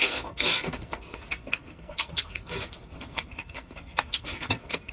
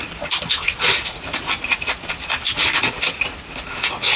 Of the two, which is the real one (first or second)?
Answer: second